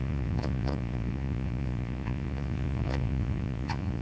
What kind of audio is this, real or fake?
fake